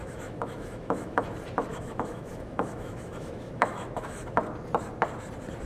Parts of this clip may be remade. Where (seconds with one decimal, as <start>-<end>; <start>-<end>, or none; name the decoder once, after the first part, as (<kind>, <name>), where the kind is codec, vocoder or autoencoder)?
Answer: 0.0-1.2 (autoencoder, DAC-VAE); 1.7-4.4